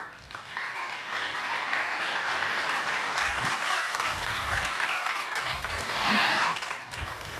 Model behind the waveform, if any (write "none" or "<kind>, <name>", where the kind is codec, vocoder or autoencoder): codec, DAC